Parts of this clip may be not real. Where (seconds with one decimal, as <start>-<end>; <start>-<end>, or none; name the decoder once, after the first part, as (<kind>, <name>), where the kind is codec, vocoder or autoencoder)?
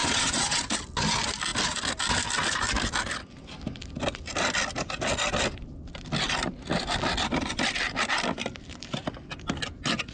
0.0-0.6 (vocoder, WaveNeXt)